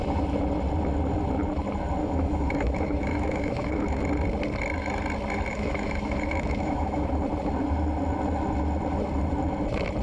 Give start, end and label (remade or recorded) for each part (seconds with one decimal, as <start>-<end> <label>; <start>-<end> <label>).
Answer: 0.0-2.0 recorded; 2.0-4.0 remade; 4.0-5.5 recorded; 5.5-7.1 remade; 7.1-10.0 recorded